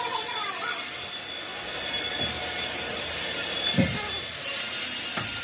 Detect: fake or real real